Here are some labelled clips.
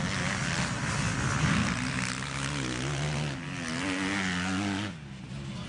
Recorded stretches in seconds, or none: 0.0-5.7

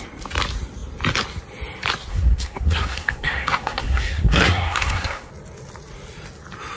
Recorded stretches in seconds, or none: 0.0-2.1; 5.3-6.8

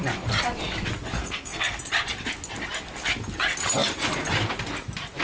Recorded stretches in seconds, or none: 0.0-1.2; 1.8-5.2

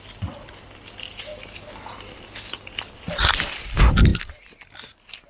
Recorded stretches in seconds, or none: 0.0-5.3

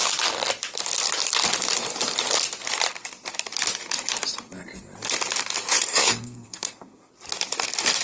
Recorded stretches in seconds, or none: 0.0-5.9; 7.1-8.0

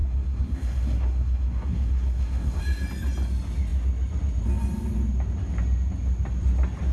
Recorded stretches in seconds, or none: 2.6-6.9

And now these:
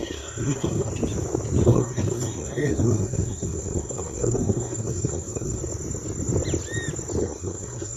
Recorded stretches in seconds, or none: 0.9-1.6; 5.6-7.2

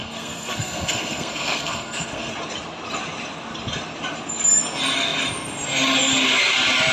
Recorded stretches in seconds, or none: 2.3-6.9